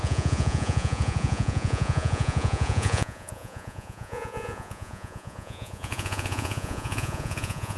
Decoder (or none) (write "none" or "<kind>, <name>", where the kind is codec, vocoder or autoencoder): vocoder, Vocos